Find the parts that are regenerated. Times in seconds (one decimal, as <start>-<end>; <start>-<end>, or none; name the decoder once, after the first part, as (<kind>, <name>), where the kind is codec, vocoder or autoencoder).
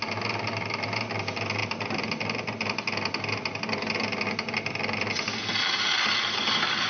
none